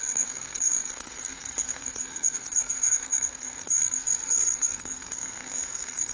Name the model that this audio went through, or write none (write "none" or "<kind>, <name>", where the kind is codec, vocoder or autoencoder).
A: codec, SNAC